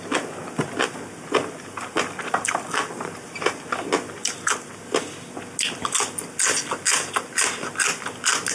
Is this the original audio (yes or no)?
yes